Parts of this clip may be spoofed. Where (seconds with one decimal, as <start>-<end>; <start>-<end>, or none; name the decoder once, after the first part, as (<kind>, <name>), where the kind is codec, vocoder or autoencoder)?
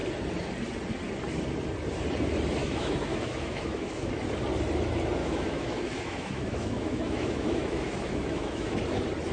2.6-4.1 (autoencoder, DAC-VAE); 5.2-8.8